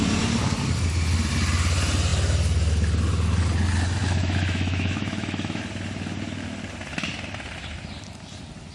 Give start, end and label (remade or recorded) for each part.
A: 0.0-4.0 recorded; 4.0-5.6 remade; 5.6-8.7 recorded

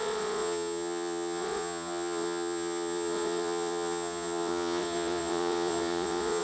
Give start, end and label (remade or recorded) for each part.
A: 0.0-6.4 remade

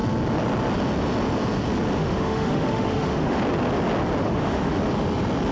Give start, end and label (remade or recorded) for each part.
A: 0.0-2.0 recorded; 2.0-3.4 remade; 3.4-4.2 recorded; 4.2-4.8 remade; 4.8-5.5 recorded